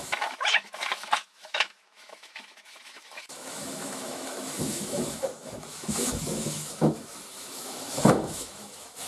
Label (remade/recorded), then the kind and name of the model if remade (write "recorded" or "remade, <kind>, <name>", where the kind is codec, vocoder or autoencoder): remade, autoencoder, DAC-VAE